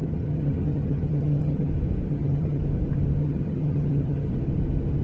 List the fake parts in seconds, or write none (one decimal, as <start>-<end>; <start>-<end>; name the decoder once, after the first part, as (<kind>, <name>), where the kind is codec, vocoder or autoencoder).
0.0-1.7 (vocoder, HiFi-GAN); 2.1-2.6; 3.2-4.3